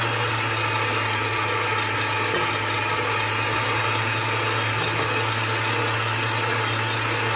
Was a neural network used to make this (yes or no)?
no